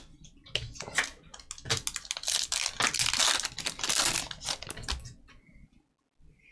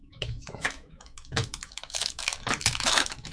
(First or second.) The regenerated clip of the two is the second